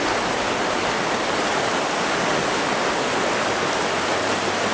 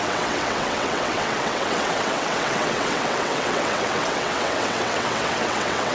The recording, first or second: first